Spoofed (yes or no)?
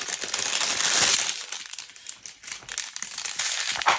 no